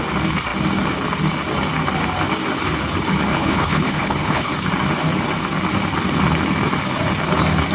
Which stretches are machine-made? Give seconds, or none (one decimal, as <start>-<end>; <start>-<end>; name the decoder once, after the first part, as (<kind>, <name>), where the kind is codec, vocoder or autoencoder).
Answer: 3.3-4.5 (codec, HILCodec)